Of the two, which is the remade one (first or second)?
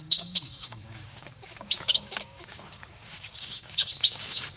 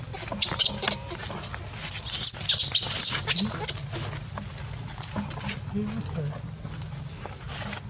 first